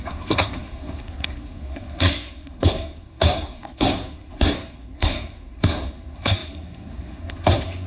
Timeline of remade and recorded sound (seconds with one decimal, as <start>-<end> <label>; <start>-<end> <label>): 0.0-7.9 remade